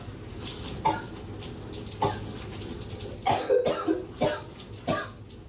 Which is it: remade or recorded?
recorded